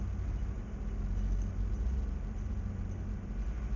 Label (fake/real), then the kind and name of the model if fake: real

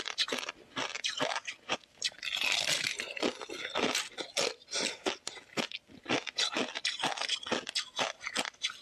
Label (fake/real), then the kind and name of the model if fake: real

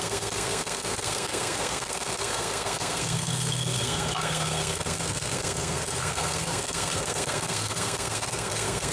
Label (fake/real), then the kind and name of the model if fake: fake, codec, SNAC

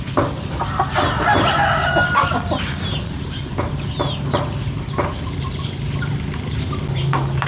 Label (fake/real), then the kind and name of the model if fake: real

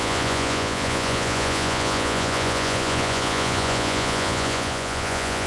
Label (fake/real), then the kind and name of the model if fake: fake, vocoder, Vocos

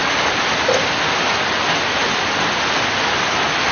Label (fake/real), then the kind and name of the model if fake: real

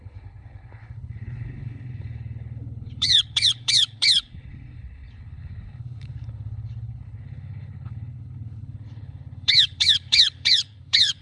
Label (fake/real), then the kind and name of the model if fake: fake, codec, HILCodec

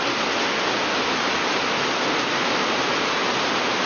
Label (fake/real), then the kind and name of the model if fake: real